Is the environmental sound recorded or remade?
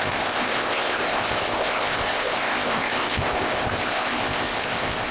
remade